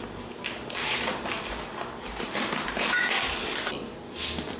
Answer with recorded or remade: recorded